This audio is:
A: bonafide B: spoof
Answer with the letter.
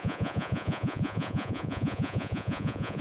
B